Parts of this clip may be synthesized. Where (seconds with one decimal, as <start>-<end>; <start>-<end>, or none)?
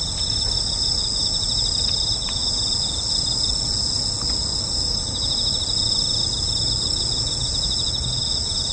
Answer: none